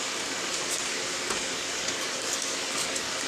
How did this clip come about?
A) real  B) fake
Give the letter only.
B